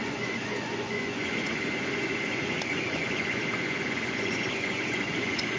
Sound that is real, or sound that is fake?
fake